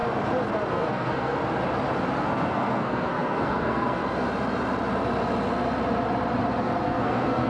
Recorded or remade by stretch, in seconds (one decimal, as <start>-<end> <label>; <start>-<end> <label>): 0.0-0.7 recorded; 0.7-1.4 remade; 1.4-2.2 recorded; 2.2-4.0 remade; 4.0-6.6 recorded; 6.6-7.5 remade